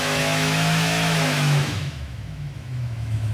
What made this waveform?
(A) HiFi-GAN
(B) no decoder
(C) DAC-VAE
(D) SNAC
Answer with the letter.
C